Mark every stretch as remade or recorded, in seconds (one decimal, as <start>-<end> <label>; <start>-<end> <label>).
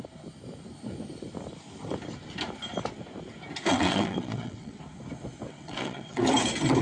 0.0-3.7 recorded; 3.7-4.8 remade; 4.8-5.5 recorded; 5.5-6.2 remade; 6.2-6.8 recorded